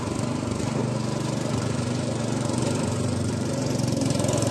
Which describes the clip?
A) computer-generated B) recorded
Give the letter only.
A